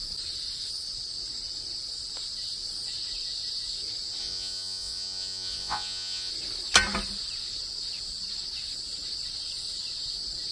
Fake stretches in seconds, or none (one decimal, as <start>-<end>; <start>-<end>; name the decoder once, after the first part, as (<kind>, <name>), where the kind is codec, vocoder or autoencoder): 4.2-6.3 (vocoder, Vocos)